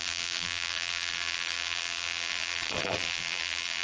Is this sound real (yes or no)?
no